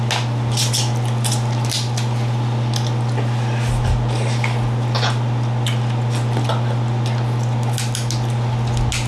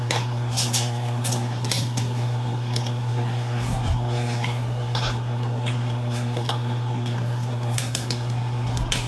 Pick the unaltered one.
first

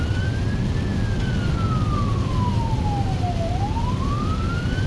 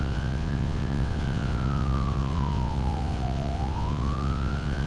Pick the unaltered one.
first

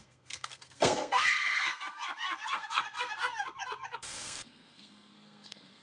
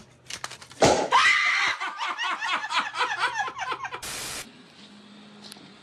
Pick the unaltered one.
second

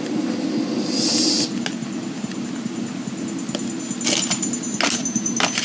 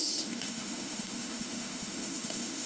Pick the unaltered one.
first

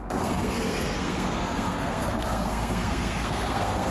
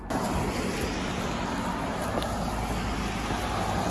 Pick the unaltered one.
second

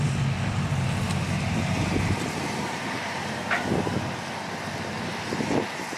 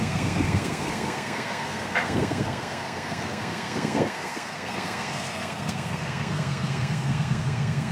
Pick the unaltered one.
first